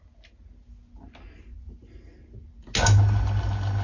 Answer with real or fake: real